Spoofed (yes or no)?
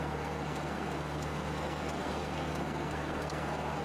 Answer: yes